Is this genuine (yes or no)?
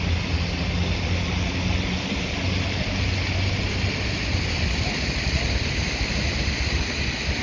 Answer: yes